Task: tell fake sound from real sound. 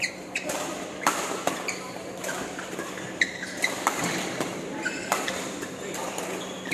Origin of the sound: fake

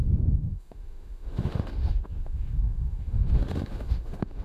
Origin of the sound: fake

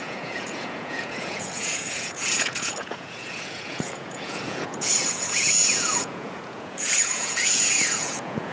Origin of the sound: fake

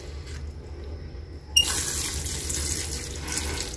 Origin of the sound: real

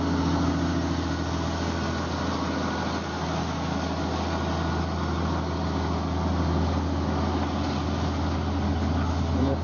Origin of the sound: real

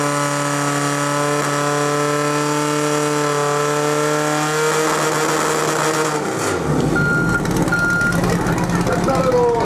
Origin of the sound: real